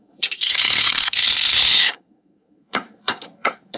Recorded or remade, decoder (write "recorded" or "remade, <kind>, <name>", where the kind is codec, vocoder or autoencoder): remade, codec, SNAC